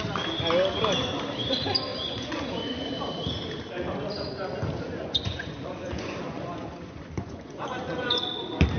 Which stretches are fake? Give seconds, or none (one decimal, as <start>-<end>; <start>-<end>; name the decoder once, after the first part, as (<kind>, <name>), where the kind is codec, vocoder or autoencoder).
1.9-2.9 (vocoder, Vocos); 4.9-8.1